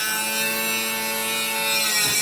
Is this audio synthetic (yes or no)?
no